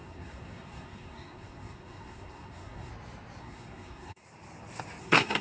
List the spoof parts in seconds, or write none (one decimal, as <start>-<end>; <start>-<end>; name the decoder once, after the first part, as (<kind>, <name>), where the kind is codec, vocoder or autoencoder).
0.0-2.9 (codec, SNAC); 3.4-4.2; 5.0-5.4